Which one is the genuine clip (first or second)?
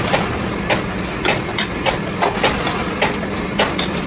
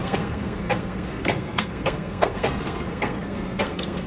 first